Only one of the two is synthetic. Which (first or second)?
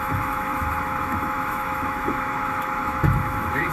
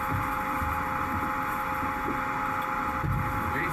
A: first